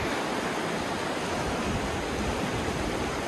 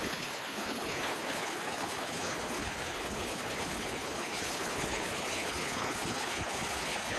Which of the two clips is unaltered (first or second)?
first